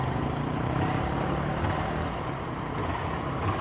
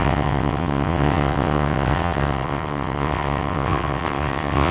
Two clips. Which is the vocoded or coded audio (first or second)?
second